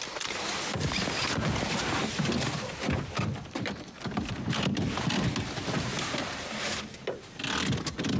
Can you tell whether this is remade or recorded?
recorded